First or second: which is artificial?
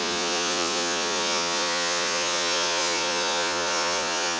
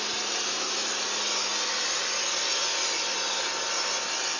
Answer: first